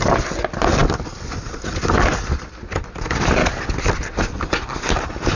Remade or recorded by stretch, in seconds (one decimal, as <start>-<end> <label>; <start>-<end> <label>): 0.0-5.4 recorded